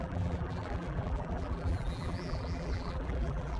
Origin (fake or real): fake